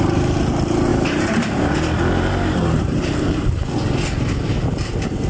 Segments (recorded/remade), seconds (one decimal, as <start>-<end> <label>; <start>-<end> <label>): 0.0-0.9 recorded; 0.9-3.5 remade; 3.5-5.3 recorded